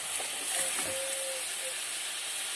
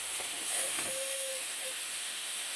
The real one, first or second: first